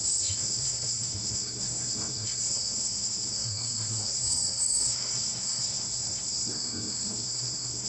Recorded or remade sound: remade